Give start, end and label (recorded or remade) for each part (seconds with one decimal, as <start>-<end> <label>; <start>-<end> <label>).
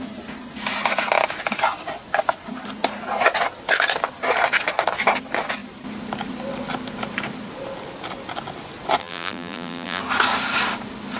0.0-9.0 recorded; 9.0-10.0 remade; 10.0-11.2 recorded